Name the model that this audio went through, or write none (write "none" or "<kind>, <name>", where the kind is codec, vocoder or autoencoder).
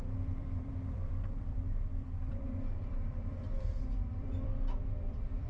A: vocoder, BigVGAN v2